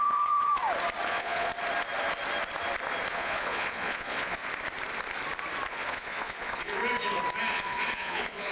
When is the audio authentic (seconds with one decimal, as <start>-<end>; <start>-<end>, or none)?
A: 0.6-1.1; 1.5-3.1; 4.4-5.7; 6.8-7.5